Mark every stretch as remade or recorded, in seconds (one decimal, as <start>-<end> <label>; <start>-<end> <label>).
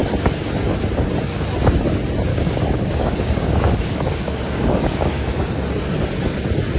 0.0-2.3 recorded; 2.3-5.5 remade; 5.5-6.8 recorded